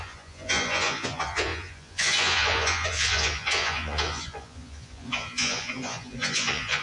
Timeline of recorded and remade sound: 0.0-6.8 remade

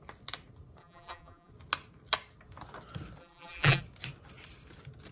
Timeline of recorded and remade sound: 0.0-0.8 recorded; 0.8-1.5 remade; 1.5-3.2 recorded; 3.2-3.8 remade; 3.8-5.1 recorded

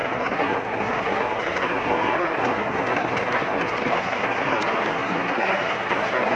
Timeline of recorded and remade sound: 0.0-6.4 remade

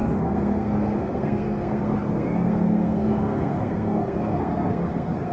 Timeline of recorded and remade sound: 0.0-5.3 remade

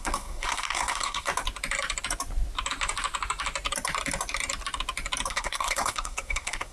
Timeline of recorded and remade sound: 0.0-1.3 remade; 1.3-5.3 recorded; 5.3-6.7 remade

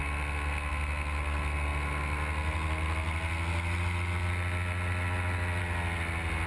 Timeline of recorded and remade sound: 0.0-6.5 recorded

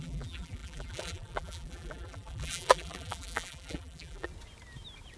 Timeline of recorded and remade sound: 0.0-4.3 remade; 4.3-5.2 recorded

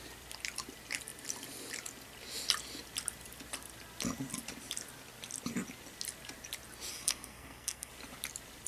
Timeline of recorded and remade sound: 0.0-6.9 recorded; 6.9-7.9 remade; 7.9-8.7 recorded